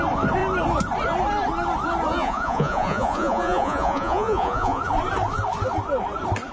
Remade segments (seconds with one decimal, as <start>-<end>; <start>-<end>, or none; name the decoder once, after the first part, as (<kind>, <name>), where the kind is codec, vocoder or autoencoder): 2.1-4.8 (vocoder, Vocos)